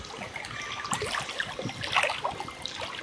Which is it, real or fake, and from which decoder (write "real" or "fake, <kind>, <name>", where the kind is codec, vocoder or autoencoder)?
real